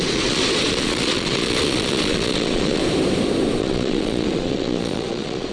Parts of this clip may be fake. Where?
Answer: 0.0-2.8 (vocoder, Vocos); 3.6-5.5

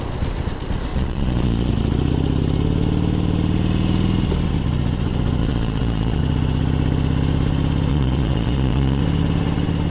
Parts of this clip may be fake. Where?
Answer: 0.9-1.7 (vocoder, Vocos); 5.4-6.2; 7.9-9.0

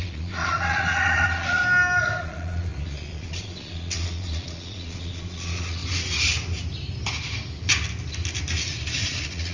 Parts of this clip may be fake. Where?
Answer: 0.0-1.6 (vocoder, Vocos); 2.2-5.8; 9.0-9.5

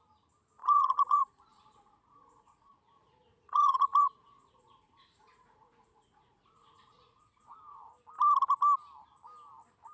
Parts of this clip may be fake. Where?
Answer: 0.6-2.8 (vocoder, Vocos); 3.3-7.9

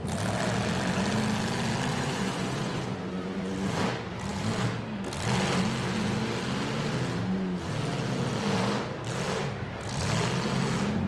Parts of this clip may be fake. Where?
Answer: 1.9-3.5 (vocoder, Vocos)

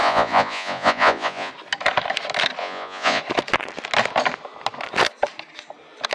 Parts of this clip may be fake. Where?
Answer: 0.0-1.5 (vocoder, Vocos); 2.6-3.2

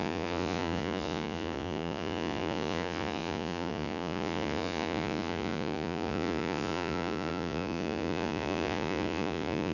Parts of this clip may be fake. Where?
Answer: 0.0-9.7 (vocoder, Vocos)